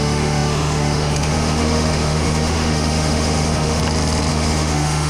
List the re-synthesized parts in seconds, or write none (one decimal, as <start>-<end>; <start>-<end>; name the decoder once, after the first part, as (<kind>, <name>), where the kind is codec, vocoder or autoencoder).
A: 0.0-3.8 (autoencoder, DAC-VAE); 4.3-5.1